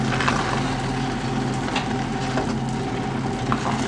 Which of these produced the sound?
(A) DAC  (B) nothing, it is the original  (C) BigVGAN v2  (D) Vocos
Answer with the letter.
B